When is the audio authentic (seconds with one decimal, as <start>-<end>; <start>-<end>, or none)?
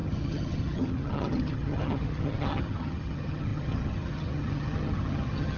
none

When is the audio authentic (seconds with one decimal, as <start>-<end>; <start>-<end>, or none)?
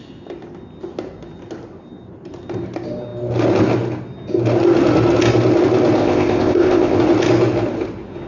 0.0-6.0; 7.0-8.3